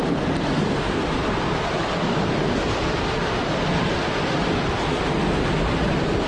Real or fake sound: real